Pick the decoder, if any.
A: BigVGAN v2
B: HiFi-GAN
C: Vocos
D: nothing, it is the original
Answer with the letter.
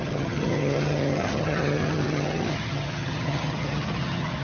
B